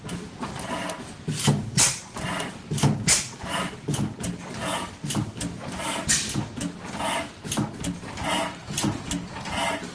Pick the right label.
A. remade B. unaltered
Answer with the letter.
B